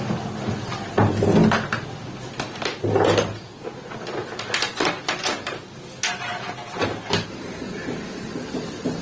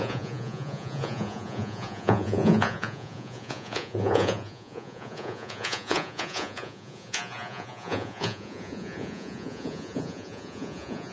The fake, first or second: second